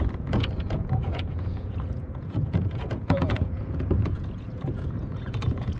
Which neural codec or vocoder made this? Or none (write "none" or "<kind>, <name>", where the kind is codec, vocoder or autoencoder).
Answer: vocoder, Vocos